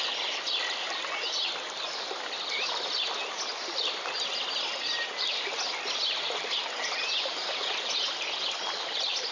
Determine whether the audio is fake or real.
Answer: real